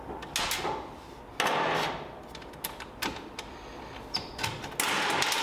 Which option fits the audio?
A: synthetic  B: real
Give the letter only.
B